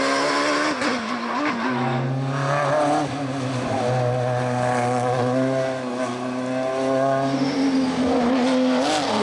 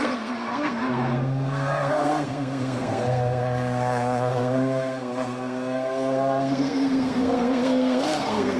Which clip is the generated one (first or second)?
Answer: second